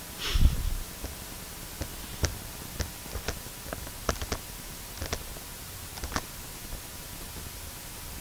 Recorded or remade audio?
recorded